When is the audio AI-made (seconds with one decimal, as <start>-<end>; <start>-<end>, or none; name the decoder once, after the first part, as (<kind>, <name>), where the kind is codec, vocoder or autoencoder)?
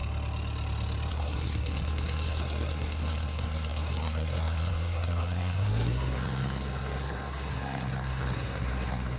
1.1-9.2 (codec, SNAC)